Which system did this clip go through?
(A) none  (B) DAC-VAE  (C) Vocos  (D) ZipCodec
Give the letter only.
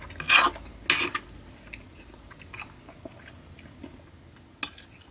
A